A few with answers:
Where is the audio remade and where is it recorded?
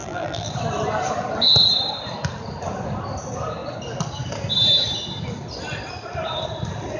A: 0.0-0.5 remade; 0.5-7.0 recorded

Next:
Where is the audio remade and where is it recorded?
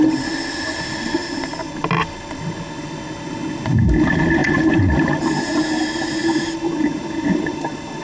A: 0.0-1.2 recorded; 1.2-1.8 remade; 1.8-4.4 recorded; 4.4-4.9 remade; 4.9-6.2 recorded; 6.2-8.0 remade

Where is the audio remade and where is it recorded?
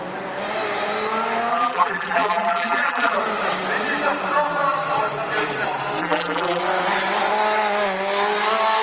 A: 0.0-1.5 recorded; 1.5-3.2 remade; 3.2-6.0 recorded; 6.0-6.6 remade; 6.6-8.8 recorded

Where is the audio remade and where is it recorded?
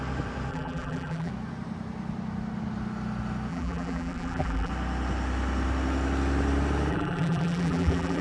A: 0.0-0.5 recorded; 0.5-1.3 remade; 1.3-3.5 recorded; 3.5-4.7 remade; 4.7-6.9 recorded; 6.9-8.2 remade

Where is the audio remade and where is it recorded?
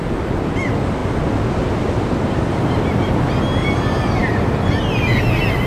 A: 0.0-4.2 recorded; 4.2-4.7 remade; 4.7-5.7 recorded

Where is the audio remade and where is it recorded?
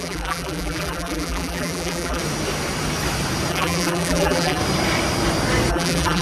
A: 0.0-2.2 remade; 2.2-3.5 recorded; 3.5-4.6 remade; 4.6-5.7 recorded; 5.7-6.2 remade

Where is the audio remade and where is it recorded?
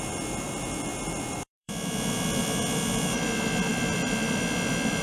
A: 0.0-5.0 remade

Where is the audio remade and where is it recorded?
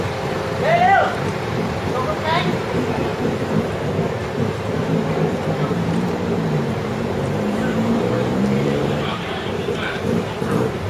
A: 0.0-3.1 remade; 3.1-4.1 recorded; 4.1-10.9 remade